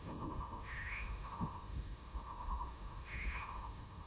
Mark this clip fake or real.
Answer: fake